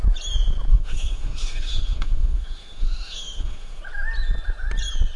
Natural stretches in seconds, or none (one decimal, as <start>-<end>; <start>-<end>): 0.0-0.7; 3.8-5.2